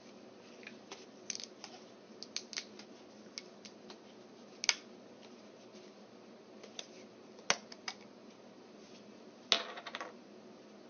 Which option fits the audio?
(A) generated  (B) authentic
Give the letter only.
B